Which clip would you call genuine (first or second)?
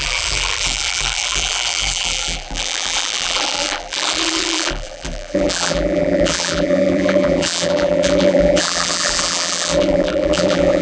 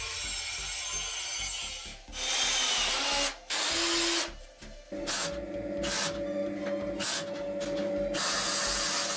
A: second